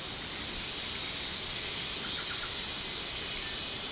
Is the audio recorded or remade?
recorded